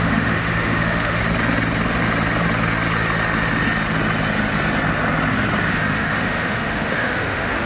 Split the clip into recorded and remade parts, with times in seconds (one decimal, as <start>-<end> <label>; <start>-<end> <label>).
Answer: 0.0-1.2 remade; 1.2-5.7 recorded; 5.7-7.7 remade